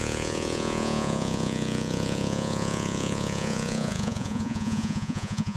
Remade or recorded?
remade